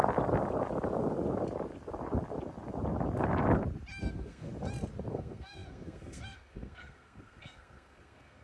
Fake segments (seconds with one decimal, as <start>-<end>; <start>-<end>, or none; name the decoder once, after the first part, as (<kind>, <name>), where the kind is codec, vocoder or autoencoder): 4.0-4.5 (codec, SNAC); 5.1-8.4